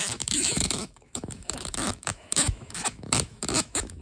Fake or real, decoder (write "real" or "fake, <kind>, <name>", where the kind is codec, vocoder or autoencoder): fake, autoencoder, DAC-VAE